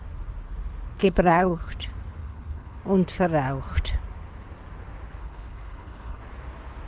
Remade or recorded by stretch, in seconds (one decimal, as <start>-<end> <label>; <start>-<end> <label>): 0.0-1.0 recorded; 1.0-1.7 remade; 1.7-2.2 recorded; 2.2-2.8 remade; 2.8-5.2 recorded; 5.2-6.2 remade; 6.2-6.9 recorded